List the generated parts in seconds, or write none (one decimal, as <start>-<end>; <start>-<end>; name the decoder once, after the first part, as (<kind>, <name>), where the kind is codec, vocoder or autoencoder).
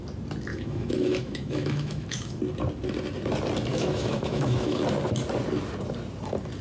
0.5-2.4 (autoencoder, DAC-VAE); 3.7-4.8